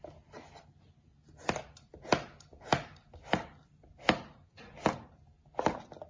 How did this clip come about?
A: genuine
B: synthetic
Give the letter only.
A